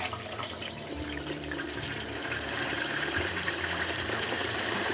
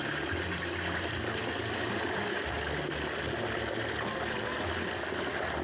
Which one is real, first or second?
second